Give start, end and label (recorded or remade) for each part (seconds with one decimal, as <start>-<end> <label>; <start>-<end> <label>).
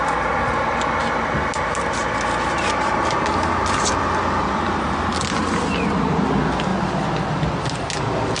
0.0-8.4 recorded